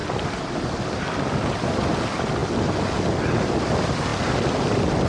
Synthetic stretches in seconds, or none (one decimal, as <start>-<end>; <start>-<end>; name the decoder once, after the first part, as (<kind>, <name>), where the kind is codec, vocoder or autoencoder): none

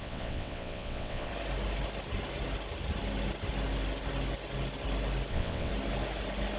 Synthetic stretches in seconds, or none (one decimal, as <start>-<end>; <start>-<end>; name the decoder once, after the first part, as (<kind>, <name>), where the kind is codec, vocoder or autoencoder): 0.0-1.3 (vocoder, WaveNeXt); 5.3-5.7

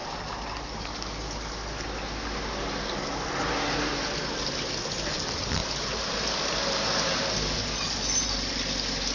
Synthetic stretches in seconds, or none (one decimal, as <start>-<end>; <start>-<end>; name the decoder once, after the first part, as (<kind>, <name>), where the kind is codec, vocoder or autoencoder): none

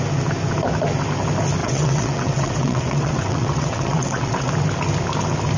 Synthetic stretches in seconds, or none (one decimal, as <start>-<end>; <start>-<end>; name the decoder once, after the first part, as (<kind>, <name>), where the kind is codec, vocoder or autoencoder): 1.6-4.5 (vocoder, WaveNeXt)

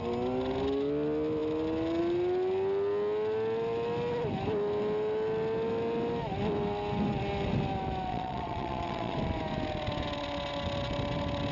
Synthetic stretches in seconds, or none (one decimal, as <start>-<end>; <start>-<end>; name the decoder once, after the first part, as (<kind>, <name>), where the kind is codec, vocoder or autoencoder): 8.1-9.2 (vocoder, WaveNeXt)

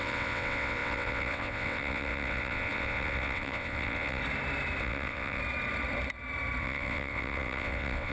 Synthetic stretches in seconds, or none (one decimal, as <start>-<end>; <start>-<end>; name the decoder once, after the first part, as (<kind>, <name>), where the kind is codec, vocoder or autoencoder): 0.0-4.2 (vocoder, WaveNeXt); 4.8-5.4; 6.6-8.1